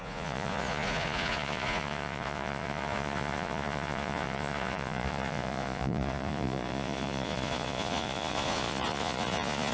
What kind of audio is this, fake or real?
fake